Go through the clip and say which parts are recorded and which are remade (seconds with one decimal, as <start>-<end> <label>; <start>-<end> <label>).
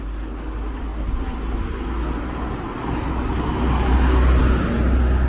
0.0-5.3 recorded